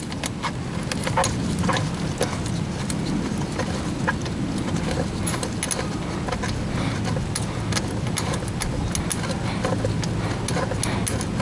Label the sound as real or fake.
real